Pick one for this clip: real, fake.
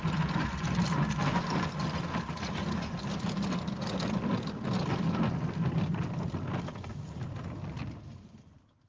real